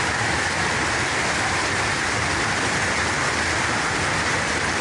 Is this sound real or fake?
real